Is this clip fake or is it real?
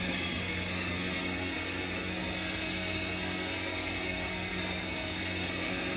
fake